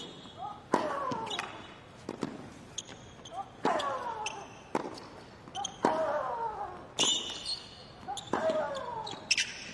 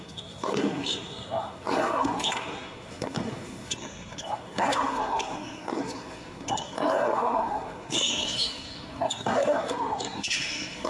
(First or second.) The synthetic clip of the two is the second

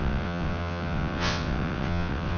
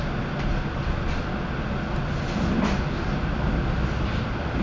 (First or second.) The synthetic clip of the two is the first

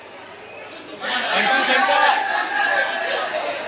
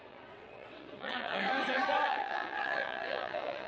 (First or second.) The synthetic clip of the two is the second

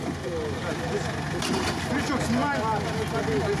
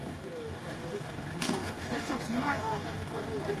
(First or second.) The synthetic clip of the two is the second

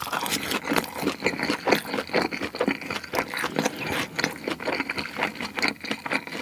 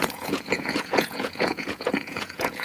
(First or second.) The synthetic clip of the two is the second